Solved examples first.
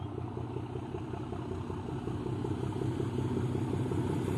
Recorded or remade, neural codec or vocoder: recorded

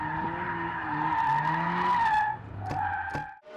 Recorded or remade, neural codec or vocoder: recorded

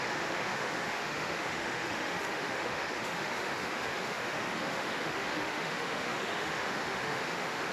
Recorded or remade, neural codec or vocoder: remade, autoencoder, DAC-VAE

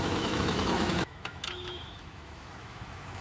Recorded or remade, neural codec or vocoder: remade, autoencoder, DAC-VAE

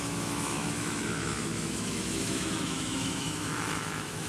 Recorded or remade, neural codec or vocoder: remade, autoencoder, DAC-VAE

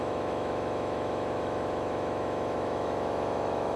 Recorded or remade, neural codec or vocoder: remade, autoencoder, DAC-VAE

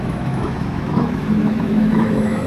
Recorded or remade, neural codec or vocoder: remade, autoencoder, DAC-VAE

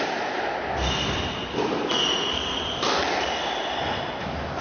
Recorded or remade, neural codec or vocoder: recorded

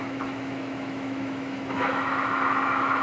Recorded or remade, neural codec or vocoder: remade, autoencoder, DAC-VAE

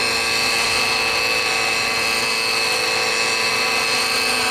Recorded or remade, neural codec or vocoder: recorded